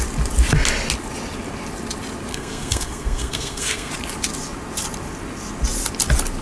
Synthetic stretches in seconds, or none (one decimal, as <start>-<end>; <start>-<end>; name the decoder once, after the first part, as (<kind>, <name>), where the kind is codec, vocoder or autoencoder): 2.3-3.9 (codec, SNAC)